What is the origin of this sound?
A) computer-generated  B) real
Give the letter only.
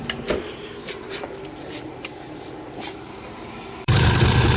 A